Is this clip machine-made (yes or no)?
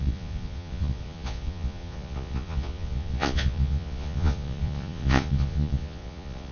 yes